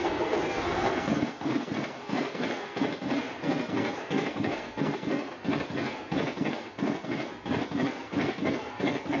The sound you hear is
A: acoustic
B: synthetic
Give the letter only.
B